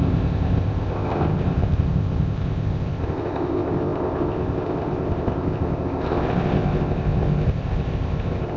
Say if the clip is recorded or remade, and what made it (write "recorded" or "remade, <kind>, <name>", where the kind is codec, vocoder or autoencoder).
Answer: remade, codec, ZipCodec